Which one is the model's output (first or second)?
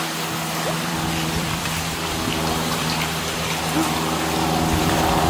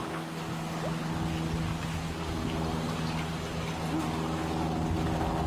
first